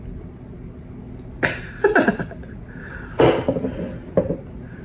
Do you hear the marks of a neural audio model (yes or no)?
no